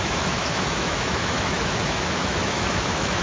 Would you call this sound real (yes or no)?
no